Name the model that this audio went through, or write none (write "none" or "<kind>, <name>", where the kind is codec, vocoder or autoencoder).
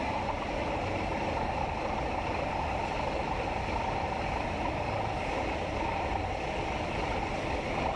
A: none